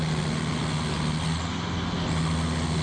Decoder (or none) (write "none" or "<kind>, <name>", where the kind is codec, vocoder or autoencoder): none